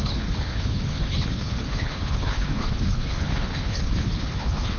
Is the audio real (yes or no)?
no